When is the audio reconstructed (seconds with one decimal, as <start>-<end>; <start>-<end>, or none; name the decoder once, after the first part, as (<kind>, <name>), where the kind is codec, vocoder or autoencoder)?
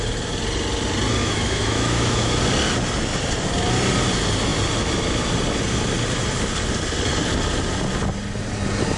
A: 1.2-2.4 (autoencoder, DAC-VAE)